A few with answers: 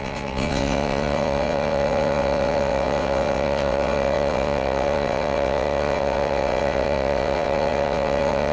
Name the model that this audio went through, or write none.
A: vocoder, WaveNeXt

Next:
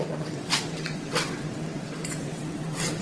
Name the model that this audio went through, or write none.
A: vocoder, WaveNeXt